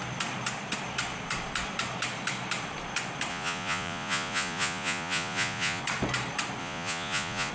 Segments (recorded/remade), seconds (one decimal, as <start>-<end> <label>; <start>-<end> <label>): 0.0-3.3 recorded; 3.3-5.8 remade; 5.8-6.6 recorded; 6.6-7.5 remade